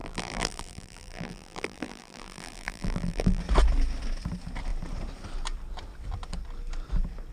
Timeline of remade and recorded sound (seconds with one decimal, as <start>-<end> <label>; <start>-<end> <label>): 0.0-3.4 remade; 3.4-7.3 recorded